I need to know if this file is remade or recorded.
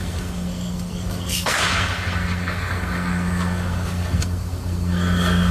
remade